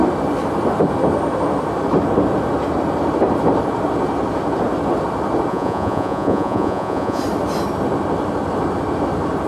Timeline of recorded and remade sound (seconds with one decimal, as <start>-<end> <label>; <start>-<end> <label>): 0.0-5.5 recorded; 5.5-7.2 remade; 7.2-9.5 recorded